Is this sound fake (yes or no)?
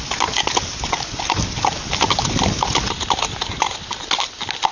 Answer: no